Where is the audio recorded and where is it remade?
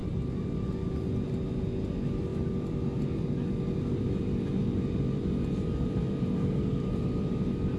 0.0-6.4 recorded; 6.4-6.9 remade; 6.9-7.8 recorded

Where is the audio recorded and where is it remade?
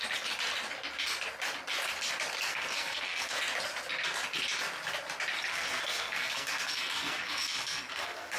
0.0-2.5 recorded; 2.5-3.4 remade; 3.4-5.5 recorded; 5.5-8.4 remade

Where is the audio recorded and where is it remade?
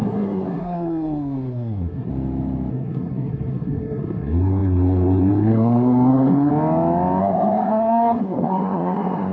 0.0-2.1 remade; 2.1-2.7 recorded; 2.7-6.5 remade; 6.5-7.2 recorded; 7.2-9.3 remade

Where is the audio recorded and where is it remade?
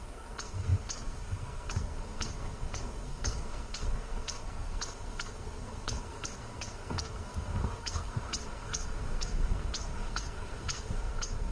0.0-11.5 remade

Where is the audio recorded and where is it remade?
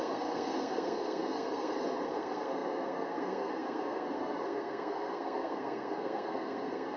0.0-7.0 remade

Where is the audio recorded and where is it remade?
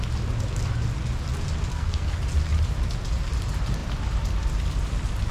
0.0-1.7 recorded; 1.7-2.2 remade; 2.2-5.3 recorded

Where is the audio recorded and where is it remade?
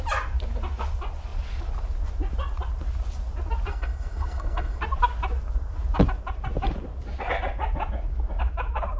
0.0-3.7 recorded; 3.7-4.8 remade; 4.8-9.0 recorded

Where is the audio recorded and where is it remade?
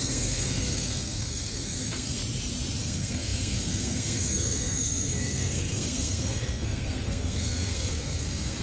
0.0-2.2 remade; 2.2-2.8 recorded; 2.8-8.6 remade